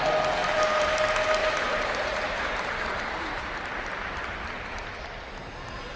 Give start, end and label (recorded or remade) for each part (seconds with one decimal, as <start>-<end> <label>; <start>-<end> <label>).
0.0-0.4 recorded; 0.4-0.9 remade; 0.9-1.4 recorded; 1.4-5.0 remade; 5.0-6.0 recorded